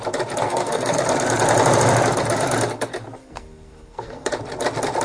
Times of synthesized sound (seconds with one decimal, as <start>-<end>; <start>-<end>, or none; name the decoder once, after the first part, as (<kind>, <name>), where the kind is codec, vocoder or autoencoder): 0.4-1.0 (codec, SNAC); 3.2-4.3